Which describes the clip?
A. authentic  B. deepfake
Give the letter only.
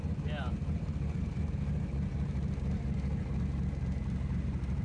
A